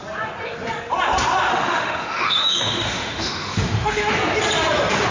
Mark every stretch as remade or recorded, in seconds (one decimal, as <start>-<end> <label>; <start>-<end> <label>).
0.0-1.5 recorded; 1.5-4.1 remade; 4.1-5.1 recorded